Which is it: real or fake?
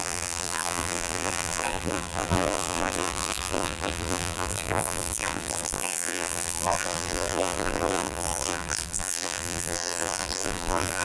fake